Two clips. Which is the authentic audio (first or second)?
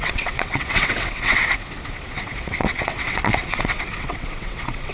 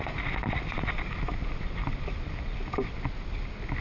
second